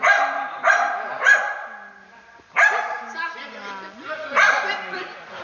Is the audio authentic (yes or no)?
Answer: yes